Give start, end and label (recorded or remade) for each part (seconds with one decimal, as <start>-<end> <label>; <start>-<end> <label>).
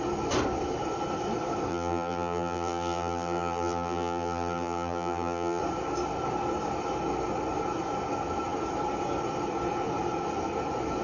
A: 0.0-1.7 recorded; 1.7-5.6 remade; 5.6-11.0 recorded